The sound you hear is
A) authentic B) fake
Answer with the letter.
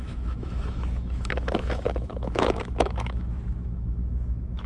B